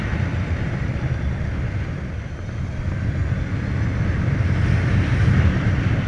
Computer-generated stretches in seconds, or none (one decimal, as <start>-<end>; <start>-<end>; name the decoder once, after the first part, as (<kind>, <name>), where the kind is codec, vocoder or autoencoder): none